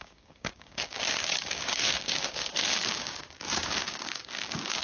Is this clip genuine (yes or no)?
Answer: no